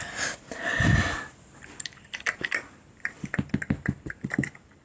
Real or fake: real